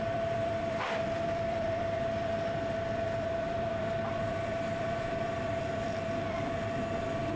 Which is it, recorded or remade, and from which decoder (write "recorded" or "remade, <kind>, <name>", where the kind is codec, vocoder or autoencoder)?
remade, vocoder, BigVGAN v2